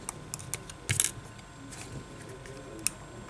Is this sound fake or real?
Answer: real